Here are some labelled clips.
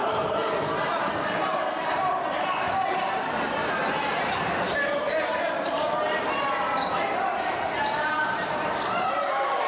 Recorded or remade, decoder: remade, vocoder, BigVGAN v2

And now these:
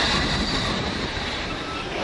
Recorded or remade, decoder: remade, vocoder, BigVGAN v2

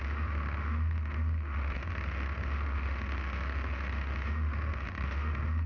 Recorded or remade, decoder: remade, autoencoder, DAC-VAE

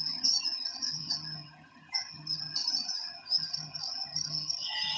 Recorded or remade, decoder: remade, vocoder, HiFi-GAN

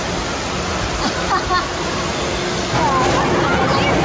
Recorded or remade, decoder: recorded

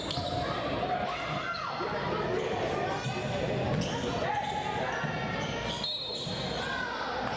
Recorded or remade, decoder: recorded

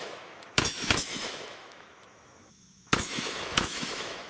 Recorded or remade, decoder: remade, autoencoder, DAC-VAE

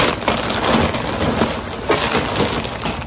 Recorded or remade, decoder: recorded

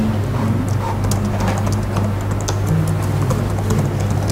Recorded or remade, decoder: recorded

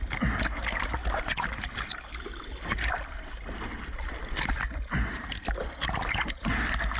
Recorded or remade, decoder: recorded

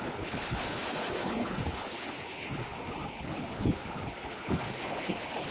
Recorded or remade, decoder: remade, codec, HILCodec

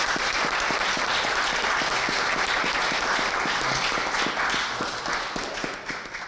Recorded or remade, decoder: recorded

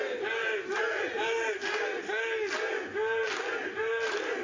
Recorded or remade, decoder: recorded